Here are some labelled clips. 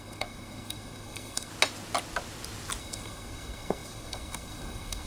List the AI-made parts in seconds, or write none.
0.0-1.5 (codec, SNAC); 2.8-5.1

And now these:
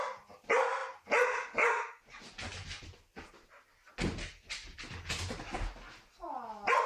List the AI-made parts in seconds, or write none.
none

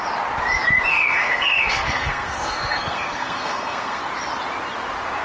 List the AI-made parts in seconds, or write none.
0.9-4.0 (codec, SNAC)

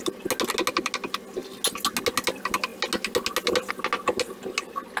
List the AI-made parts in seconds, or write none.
none

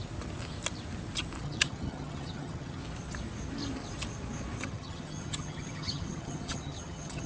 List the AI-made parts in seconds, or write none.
1.4-2.8 (vocoder, HiFi-GAN); 4.6-7.3

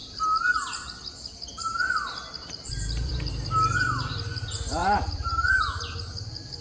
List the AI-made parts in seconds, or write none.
none

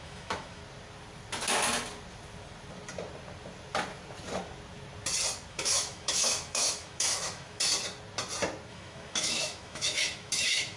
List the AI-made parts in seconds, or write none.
0.0-0.6 (autoencoder, DAC-VAE); 5.5-7.7; 8.7-10.8

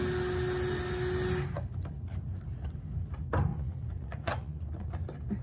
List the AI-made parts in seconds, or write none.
3.5-4.9 (vocoder, Vocos)